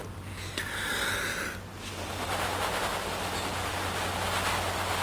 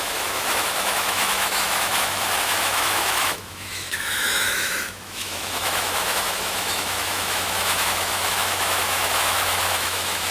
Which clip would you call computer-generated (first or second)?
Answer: second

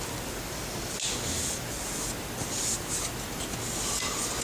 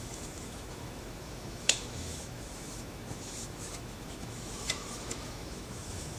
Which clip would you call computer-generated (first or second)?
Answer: second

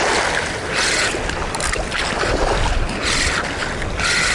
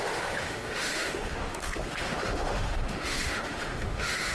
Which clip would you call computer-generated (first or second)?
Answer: second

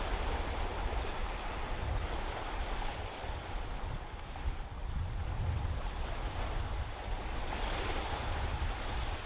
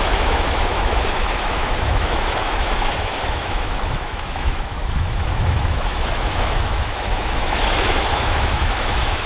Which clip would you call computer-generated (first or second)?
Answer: second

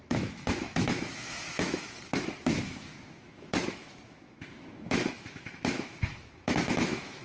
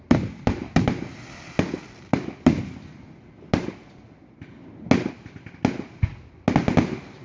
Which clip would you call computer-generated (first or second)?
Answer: first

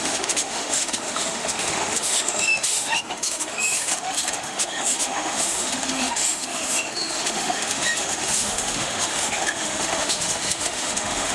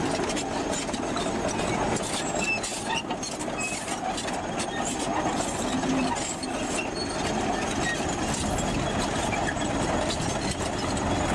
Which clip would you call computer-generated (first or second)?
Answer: first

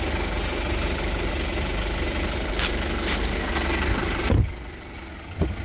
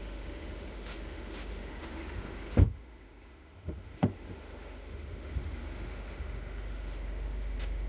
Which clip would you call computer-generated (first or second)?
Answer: second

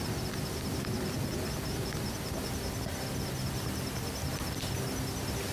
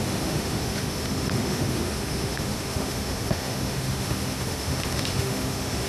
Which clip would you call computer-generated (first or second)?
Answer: second